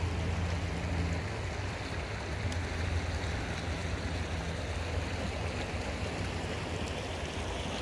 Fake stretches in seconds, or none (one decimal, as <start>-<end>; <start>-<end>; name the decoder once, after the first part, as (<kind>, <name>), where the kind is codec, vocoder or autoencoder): none

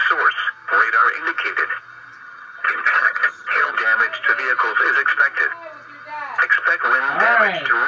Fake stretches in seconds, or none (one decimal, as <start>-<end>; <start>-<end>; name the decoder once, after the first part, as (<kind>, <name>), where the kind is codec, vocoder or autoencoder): 2.2-3.8 (vocoder, HiFi-GAN)

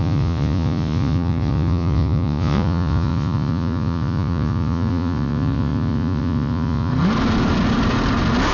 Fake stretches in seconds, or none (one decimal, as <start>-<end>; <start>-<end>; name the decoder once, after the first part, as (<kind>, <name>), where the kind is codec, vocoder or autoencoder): 0.0-6.9 (vocoder, Vocos)

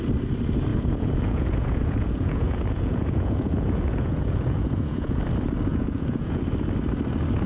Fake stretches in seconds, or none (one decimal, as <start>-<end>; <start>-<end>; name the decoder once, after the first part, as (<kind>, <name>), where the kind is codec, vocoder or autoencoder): 0.7-5.2 (vocoder, Vocos); 5.7-6.4

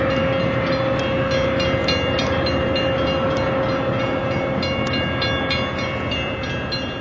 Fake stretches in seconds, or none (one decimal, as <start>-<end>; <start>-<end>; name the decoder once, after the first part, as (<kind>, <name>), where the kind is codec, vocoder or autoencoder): none

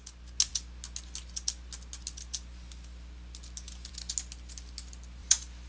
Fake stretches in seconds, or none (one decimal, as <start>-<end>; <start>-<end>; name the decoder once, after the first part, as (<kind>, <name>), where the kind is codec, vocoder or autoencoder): 5.2-5.7 (vocoder, BigVGAN v2)

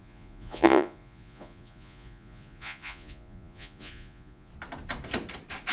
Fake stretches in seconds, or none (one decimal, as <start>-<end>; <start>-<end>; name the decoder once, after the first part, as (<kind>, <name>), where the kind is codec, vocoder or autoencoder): 0.0-4.5 (vocoder, Vocos)